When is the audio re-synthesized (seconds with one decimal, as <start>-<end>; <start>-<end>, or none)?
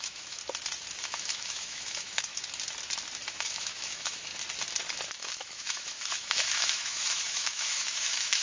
0.0-0.4; 1.0-2.3; 3.3-4.3; 5.1-8.4